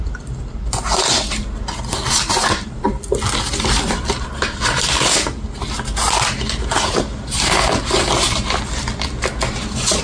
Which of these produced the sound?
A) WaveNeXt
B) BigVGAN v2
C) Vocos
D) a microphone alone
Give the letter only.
D